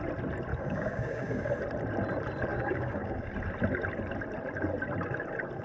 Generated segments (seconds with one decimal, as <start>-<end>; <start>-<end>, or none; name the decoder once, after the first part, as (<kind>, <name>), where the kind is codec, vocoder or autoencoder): 0.5-1.5 (codec, DAC); 2.5-3.3